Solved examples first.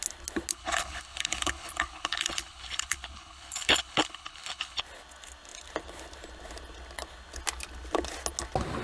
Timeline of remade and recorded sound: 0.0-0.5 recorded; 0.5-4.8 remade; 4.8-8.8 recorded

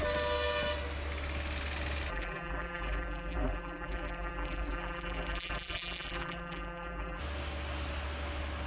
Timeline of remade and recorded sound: 0.0-2.1 recorded; 2.1-7.2 remade; 7.2-8.7 recorded

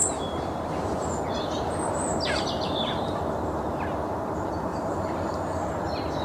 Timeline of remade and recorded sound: 0.0-0.7 remade; 0.7-2.1 recorded; 2.1-3.2 remade; 3.2-4.7 recorded; 4.7-5.4 remade; 5.4-6.2 recorded

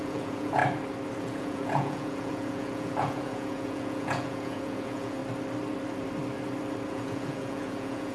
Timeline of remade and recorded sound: 0.0-0.6 remade; 0.6-1.2 recorded; 1.2-5.2 remade; 5.2-6.9 recorded; 6.9-8.1 remade

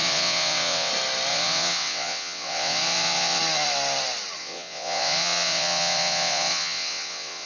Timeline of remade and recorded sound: 0.0-0.9 remade; 0.9-1.3 recorded; 1.3-3.4 remade; 3.4-4.4 recorded; 4.4-7.5 remade